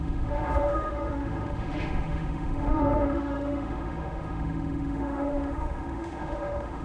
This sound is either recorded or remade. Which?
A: remade